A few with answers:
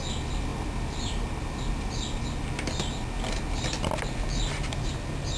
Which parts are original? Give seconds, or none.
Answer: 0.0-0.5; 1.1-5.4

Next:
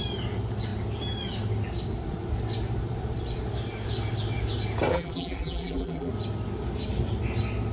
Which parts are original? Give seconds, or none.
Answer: 0.0-4.9; 6.1-7.7

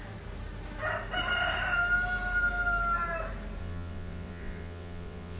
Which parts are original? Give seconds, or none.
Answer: 0.0-3.6

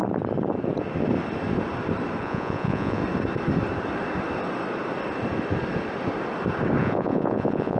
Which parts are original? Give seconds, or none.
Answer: 0.0-2.2; 3.0-6.8